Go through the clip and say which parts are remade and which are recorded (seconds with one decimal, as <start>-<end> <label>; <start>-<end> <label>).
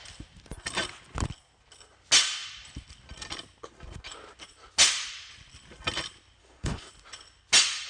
0.0-6.4 recorded; 6.4-6.9 remade; 6.9-7.9 recorded